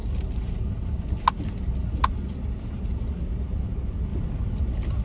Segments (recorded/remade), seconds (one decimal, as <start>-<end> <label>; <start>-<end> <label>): 0.0-5.0 recorded